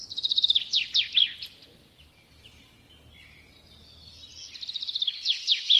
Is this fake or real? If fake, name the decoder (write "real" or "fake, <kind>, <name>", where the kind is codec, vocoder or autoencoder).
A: real